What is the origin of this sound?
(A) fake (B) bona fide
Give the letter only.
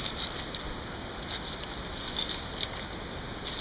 B